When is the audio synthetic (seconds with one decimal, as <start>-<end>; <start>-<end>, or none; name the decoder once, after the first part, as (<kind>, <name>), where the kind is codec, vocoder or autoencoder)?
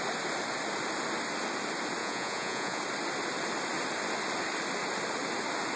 2.0-2.8 (vocoder, Vocos)